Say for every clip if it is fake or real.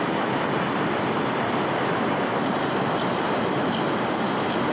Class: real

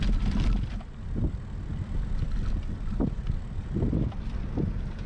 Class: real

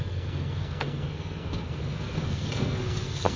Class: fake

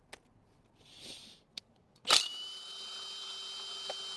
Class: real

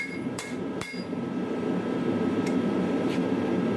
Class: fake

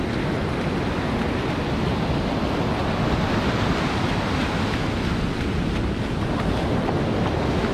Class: real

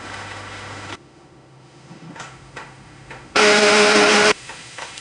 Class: fake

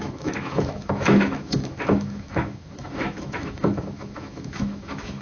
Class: fake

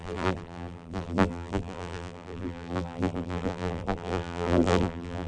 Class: fake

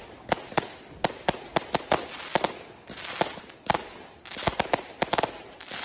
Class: real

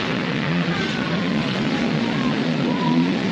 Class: fake